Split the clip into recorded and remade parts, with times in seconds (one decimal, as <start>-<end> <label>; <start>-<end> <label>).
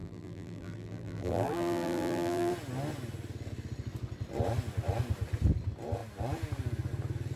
0.0-2.5 remade; 2.5-7.4 recorded